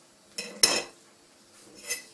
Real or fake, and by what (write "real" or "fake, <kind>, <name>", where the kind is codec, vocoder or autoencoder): real